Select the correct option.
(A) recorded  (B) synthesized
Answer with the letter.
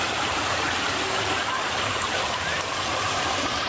B